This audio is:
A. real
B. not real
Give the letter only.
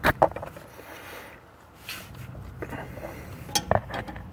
A